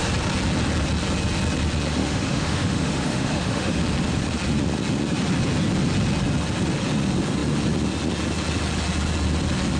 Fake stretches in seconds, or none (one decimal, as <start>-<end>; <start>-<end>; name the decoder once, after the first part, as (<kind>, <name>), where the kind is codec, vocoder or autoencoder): 2.0-3.8 (autoencoder, DAC-VAE)